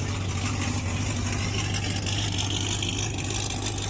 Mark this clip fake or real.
real